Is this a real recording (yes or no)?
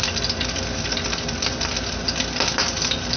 yes